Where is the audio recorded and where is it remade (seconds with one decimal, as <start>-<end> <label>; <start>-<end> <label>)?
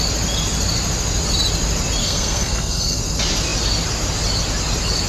0.0-2.0 recorded; 2.0-3.0 remade; 3.0-5.1 recorded